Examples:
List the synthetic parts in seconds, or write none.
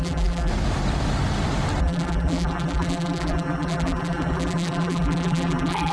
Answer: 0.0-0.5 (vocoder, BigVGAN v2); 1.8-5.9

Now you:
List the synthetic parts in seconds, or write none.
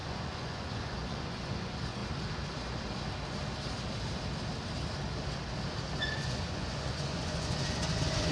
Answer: 0.0-2.0 (vocoder, Vocos); 6.0-8.3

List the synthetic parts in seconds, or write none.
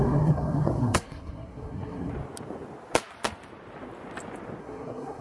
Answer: 0.0-2.1 (codec, SNAC); 4.6-5.2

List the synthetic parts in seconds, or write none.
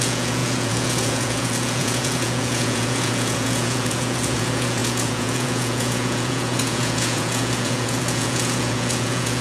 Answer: 0.0-9.4 (vocoder, Vocos)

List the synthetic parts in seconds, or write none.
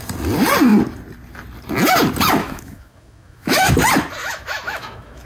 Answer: 2.4-3.7 (autoencoder, DAC-VAE); 4.2-5.3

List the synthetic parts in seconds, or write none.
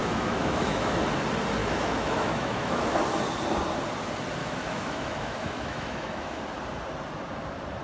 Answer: 0.0-1.0 (autoencoder, DAC-VAE); 1.6-3.0; 4.4-6.4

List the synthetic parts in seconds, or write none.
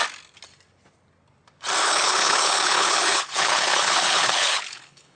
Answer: 1.8-5.2 (codec, HILCodec)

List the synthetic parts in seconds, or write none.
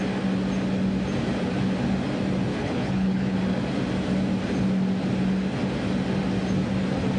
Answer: 2.5-3.4 (codec, HILCodec)